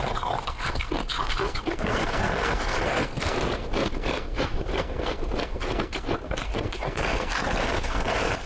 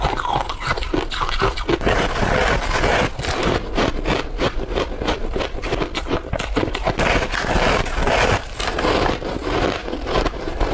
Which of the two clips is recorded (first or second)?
second